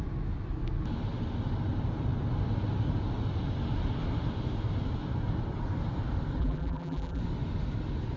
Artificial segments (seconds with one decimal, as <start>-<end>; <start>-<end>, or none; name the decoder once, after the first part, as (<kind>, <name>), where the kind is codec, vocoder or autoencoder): 6.4-7.2 (vocoder, BigVGAN v2)